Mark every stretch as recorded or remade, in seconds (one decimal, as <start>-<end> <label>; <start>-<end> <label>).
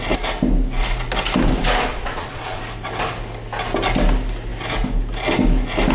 0.0-1.9 recorded; 1.9-2.6 remade; 2.6-5.9 recorded